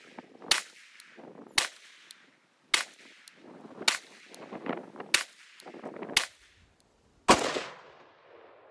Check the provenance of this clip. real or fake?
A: real